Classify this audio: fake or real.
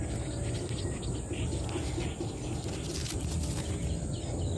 real